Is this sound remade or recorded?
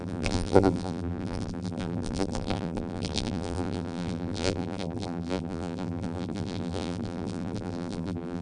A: remade